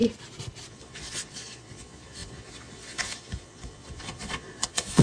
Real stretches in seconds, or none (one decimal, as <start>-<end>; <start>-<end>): 0.0-0.7